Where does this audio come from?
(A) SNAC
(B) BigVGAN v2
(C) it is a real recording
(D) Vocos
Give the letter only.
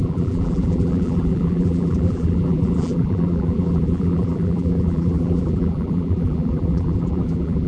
B